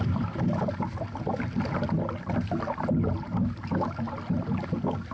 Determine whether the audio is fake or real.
real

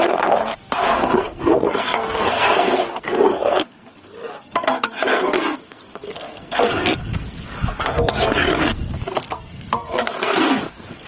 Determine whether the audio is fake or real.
fake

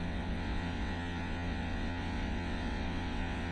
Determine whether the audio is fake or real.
fake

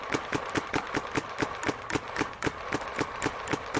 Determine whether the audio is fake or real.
real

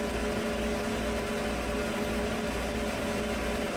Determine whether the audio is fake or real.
real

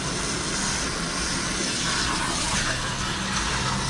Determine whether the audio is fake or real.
real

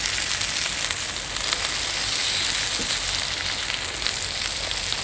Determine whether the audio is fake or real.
real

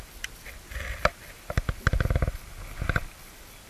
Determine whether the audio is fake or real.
real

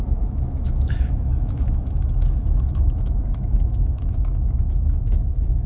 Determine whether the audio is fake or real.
fake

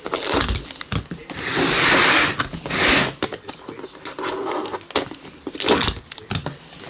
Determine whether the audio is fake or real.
real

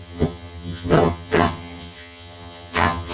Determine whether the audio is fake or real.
fake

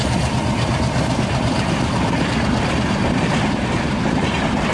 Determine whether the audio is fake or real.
fake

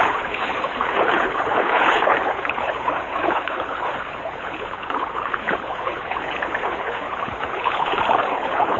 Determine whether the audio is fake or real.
fake